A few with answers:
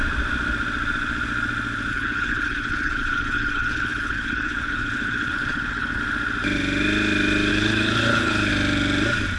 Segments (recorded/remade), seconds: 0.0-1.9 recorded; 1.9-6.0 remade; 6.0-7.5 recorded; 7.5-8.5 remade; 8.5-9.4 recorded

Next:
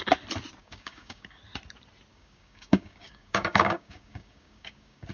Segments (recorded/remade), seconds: 0.0-0.6 recorded; 0.6-1.4 remade; 1.4-2.1 recorded; 2.1-5.1 remade

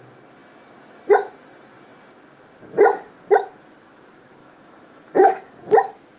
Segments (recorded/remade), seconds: 0.0-4.4 recorded; 4.4-5.3 remade; 5.3-6.2 recorded